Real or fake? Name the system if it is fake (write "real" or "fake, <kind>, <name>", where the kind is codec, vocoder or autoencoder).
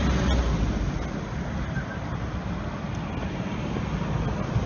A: real